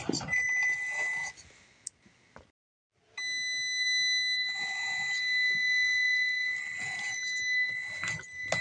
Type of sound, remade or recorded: recorded